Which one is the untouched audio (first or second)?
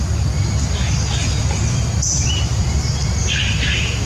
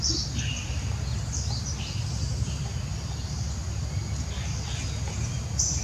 first